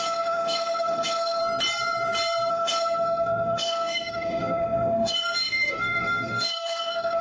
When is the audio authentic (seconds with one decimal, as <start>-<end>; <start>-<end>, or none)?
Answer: 1.4-2.5